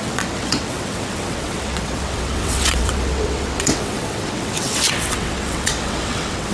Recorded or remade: remade